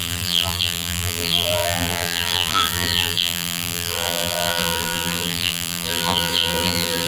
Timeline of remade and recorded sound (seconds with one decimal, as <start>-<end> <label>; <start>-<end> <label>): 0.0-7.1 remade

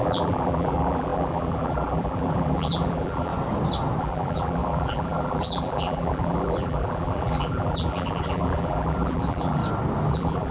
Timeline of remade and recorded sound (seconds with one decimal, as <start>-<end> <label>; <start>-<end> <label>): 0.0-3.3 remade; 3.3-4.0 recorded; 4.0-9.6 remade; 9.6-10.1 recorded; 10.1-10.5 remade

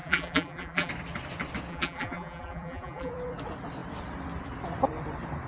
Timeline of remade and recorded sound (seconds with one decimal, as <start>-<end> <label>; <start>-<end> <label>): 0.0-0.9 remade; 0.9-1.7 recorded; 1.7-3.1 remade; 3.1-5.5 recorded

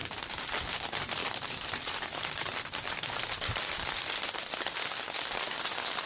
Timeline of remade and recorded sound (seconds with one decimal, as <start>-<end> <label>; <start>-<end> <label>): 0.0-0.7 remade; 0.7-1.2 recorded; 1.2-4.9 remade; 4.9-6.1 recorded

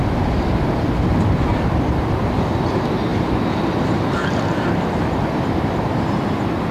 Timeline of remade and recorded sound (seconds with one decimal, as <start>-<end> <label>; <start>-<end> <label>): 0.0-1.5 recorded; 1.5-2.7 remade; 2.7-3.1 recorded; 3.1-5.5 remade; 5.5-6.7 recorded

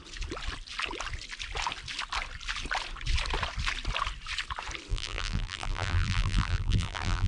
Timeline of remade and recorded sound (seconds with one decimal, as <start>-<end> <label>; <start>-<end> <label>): 0.0-4.9 recorded; 4.9-7.3 remade

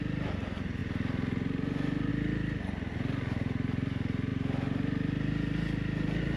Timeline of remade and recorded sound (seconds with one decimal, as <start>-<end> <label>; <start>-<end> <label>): 0.0-6.4 recorded

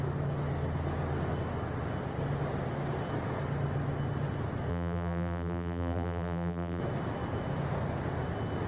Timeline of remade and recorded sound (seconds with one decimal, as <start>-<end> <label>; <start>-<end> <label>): 0.0-4.7 recorded; 4.7-6.8 remade; 6.8-8.7 recorded